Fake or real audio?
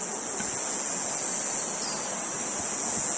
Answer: real